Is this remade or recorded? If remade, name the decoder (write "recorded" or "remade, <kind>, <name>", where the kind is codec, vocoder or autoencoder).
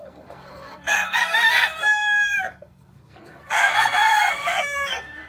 remade, codec, SNAC